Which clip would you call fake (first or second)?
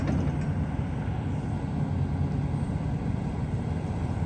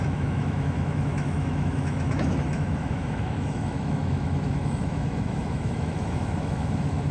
second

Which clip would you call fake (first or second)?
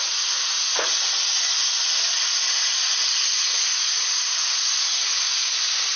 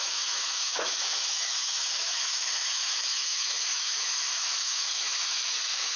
second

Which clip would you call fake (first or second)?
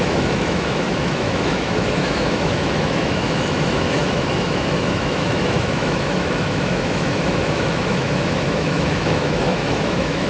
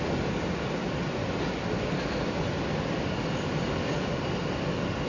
first